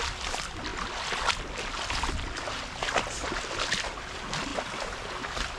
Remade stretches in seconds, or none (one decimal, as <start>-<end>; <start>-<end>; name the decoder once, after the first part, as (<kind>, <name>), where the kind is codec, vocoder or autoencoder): none